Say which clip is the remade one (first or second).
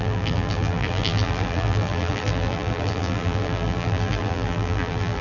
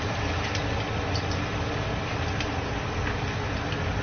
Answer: first